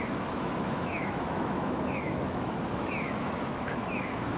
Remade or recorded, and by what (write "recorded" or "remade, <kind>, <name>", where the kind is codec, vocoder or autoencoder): remade, autoencoder, DAC-VAE